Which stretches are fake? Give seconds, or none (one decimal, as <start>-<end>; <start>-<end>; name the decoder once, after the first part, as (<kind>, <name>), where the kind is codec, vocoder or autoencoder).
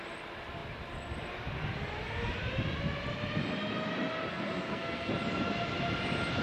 4.3-5.1 (codec, SNAC)